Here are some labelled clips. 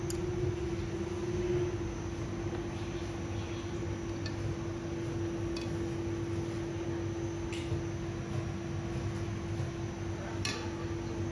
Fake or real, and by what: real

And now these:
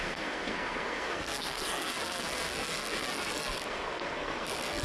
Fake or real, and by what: fake, codec, SNAC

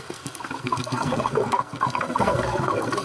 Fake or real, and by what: fake, codec, SNAC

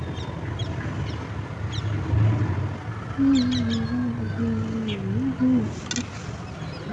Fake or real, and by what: real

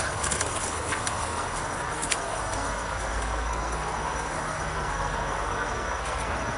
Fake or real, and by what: fake, codec, SNAC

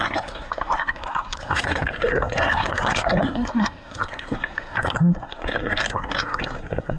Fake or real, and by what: fake, codec, SNAC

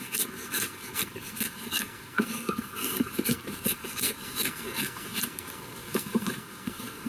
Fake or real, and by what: fake, codec, SNAC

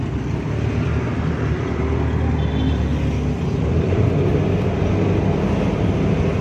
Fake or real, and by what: real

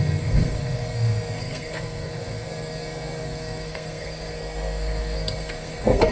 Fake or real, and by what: fake, codec, SNAC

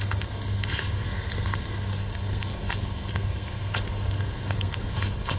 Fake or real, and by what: fake, codec, SNAC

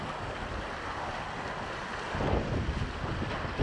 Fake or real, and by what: real